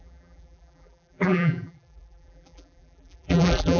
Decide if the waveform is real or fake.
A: fake